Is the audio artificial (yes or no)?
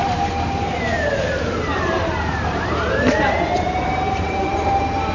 yes